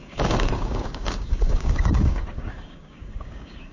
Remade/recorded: remade